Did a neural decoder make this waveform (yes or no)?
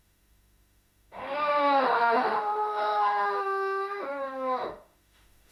yes